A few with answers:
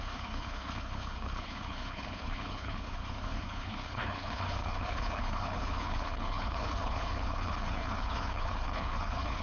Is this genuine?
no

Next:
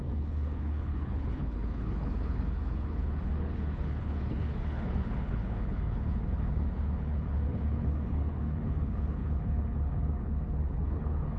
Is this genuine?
no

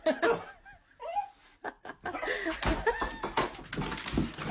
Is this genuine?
yes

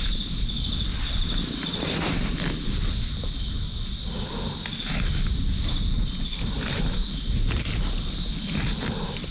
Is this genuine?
yes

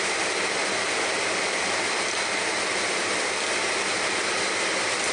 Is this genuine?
yes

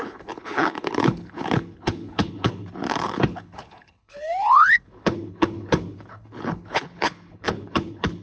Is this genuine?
no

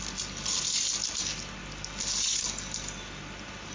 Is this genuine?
yes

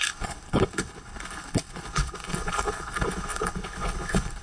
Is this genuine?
no